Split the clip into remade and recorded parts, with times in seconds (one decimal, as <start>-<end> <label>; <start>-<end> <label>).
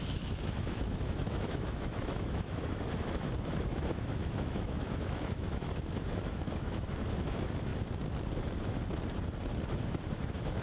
0.0-7.7 remade; 7.7-9.7 recorded; 9.7-10.6 remade